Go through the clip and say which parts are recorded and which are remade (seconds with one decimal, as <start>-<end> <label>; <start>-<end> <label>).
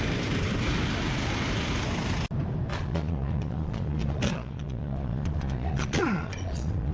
0.0-2.7 recorded; 2.7-6.9 remade